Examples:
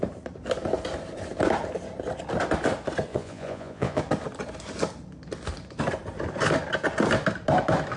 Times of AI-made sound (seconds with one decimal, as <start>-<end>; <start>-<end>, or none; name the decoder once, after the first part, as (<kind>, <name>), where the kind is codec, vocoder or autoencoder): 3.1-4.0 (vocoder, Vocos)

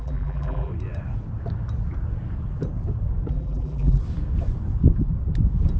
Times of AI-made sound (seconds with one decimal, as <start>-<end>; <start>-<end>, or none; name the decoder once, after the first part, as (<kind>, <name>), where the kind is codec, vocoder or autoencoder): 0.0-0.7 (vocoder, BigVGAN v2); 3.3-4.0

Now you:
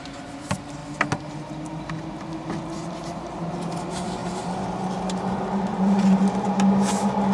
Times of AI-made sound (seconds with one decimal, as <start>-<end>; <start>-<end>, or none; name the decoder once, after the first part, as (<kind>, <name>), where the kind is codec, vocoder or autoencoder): 5.7-6.2 (vocoder, Vocos)

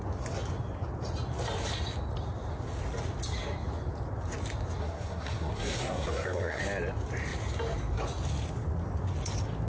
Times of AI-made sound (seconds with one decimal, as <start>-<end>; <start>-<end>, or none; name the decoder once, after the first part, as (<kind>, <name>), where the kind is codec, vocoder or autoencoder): 4.8-6.6 (codec, SNAC)

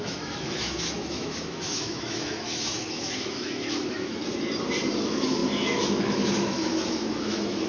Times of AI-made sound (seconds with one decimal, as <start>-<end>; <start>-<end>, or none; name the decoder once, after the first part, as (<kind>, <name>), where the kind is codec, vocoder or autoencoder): 0.0-4.2 (autoencoder, DAC-VAE); 5.0-7.7

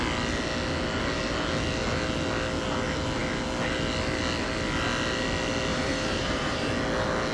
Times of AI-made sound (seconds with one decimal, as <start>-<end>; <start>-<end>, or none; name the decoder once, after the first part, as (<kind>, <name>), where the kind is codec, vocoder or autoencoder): 5.7-6.7 (vocoder, BigVGAN v2)

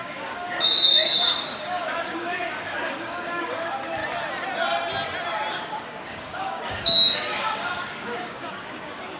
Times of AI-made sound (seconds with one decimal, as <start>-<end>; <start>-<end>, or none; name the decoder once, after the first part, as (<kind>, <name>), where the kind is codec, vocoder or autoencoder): 0.0-4.0 (codec, DAC); 5.5-9.2

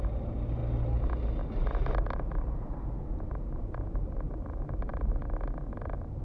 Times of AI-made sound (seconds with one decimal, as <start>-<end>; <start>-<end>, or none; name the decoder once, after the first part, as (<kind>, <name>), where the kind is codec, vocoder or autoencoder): 0.0-0.6 (vocoder, BigVGAN v2); 1.8-6.2